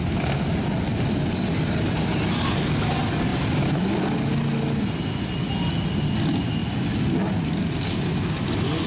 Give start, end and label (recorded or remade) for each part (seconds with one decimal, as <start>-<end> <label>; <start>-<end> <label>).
0.0-8.9 recorded